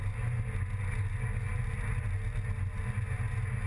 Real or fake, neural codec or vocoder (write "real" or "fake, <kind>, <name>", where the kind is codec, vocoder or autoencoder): real